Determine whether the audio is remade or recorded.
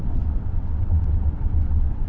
remade